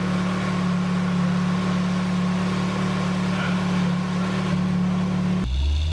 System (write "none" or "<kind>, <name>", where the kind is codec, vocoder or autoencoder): none